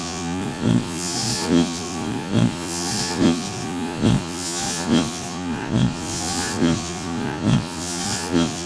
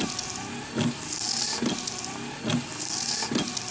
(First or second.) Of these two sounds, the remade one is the first